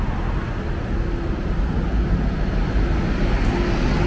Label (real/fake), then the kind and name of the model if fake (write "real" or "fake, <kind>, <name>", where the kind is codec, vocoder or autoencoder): real